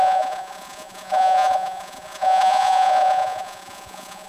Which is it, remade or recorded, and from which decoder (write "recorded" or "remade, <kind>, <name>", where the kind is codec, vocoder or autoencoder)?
remade, vocoder, Vocos